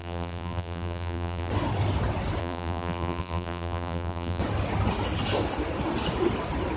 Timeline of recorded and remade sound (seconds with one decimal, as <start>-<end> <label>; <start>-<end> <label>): 0.0-1.5 remade; 1.5-2.4 recorded; 2.4-4.4 remade; 4.4-6.8 recorded